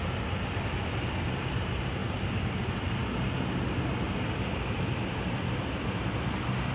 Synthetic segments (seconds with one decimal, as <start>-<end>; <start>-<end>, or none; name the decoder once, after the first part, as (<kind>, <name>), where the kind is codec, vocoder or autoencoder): 2.0-2.6 (vocoder, BigVGAN v2)